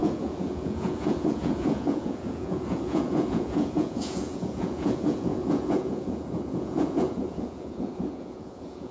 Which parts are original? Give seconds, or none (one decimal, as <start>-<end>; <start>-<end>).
none